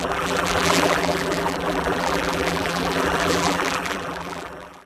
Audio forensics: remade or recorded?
remade